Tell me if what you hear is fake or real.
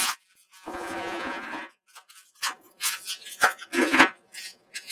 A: fake